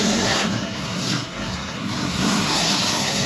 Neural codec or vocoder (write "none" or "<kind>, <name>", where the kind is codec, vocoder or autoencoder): codec, SNAC